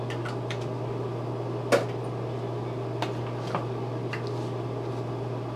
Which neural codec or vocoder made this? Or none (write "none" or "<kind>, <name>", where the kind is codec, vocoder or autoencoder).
none